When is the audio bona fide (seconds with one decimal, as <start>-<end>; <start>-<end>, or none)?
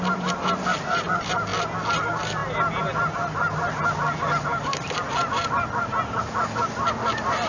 0.0-7.5